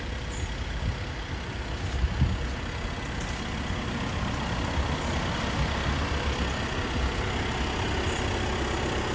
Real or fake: real